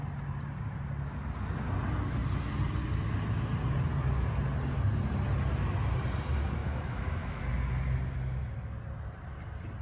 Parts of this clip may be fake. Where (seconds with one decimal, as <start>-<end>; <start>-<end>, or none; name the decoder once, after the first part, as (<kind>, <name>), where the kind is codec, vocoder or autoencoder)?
6.6-7.4 (autoencoder, DAC-VAE)